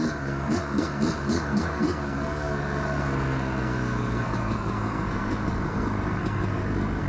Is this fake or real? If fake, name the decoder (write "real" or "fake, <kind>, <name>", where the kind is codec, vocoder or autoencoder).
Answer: fake, codec, SNAC